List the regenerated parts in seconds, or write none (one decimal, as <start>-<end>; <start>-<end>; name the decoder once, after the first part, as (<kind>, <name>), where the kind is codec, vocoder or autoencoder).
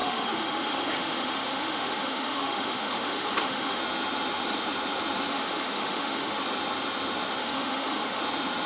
0.0-3.8 (autoencoder, DAC-VAE); 5.3-6.4; 7.4-8.2